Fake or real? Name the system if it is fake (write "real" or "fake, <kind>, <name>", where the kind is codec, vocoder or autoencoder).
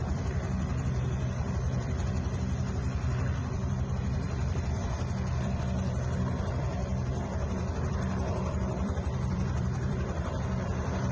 fake, vocoder, BigVGAN v2